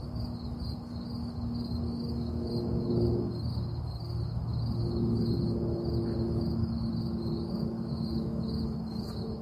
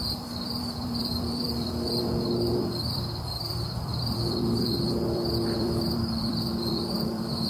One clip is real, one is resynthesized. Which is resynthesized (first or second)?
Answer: second